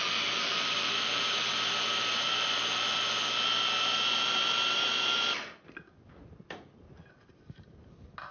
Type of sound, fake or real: real